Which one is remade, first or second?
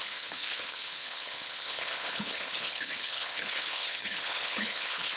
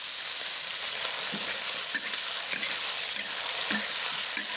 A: first